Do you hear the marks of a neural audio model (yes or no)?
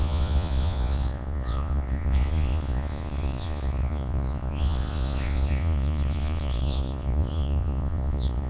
yes